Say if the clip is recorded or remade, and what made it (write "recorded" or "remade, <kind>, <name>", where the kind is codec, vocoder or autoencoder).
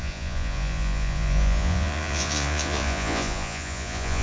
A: remade, vocoder, Vocos